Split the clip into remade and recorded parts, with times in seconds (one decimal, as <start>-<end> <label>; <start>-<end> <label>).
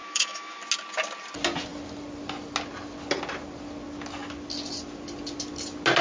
0.0-0.6 remade; 0.6-6.0 recorded